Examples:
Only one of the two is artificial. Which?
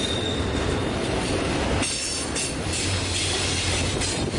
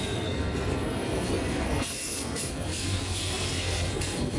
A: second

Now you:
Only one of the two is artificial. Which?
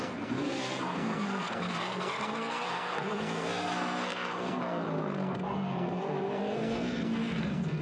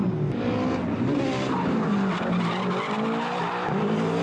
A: first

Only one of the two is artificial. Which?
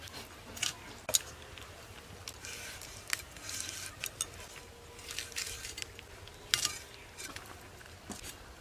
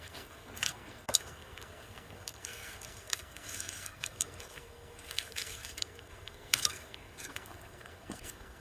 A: second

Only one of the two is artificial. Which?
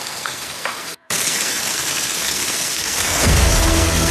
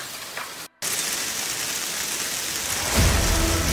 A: first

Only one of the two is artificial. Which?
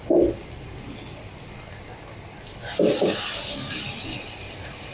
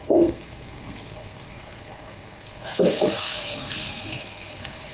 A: second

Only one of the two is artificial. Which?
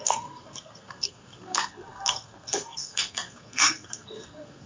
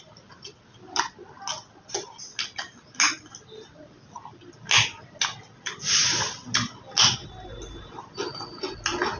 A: first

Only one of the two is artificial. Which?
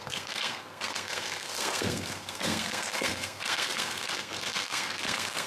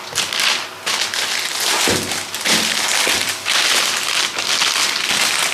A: first